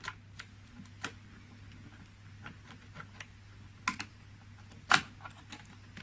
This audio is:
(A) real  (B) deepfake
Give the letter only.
A